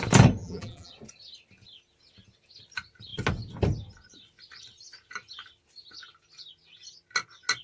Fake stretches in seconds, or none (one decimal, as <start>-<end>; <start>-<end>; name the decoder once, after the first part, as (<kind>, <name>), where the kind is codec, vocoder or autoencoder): 0.4-0.9 (vocoder, BigVGAN v2)